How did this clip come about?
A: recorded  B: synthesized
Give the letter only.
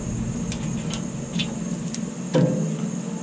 A